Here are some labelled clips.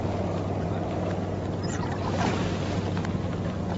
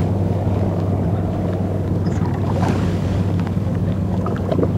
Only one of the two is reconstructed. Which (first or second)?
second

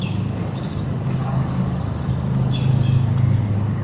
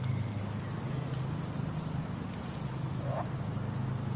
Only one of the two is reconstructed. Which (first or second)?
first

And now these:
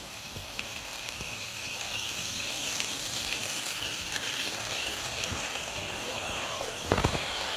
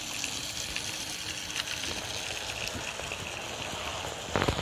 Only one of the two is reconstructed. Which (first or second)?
first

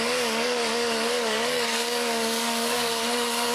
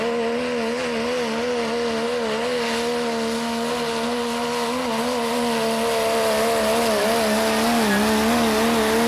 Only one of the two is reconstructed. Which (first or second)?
first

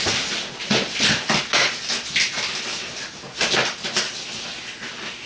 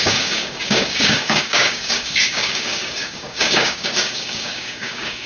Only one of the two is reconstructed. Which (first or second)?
second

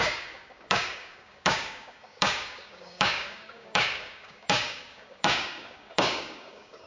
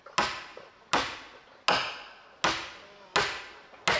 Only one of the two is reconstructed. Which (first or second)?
first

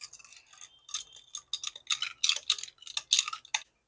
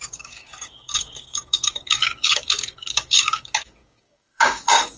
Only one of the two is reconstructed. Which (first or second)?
second